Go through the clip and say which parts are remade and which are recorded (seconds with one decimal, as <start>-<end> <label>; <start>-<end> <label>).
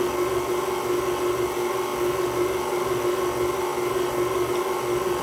0.0-5.2 recorded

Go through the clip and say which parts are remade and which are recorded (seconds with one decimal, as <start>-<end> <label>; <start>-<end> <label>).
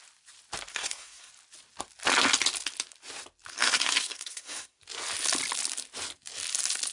0.0-0.7 recorded; 0.7-1.3 remade; 1.3-3.5 recorded; 3.5-4.8 remade; 4.8-6.9 recorded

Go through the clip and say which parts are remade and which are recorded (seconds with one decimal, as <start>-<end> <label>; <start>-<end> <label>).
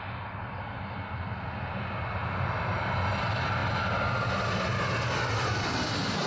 0.0-6.3 recorded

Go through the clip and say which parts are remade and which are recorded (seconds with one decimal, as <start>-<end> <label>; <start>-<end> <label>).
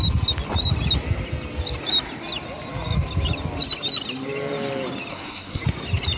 0.0-5.1 recorded; 5.1-5.6 remade; 5.6-6.2 recorded